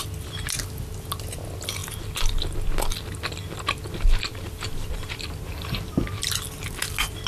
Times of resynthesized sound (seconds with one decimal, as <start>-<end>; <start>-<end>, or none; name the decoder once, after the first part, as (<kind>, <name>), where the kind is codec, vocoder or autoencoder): none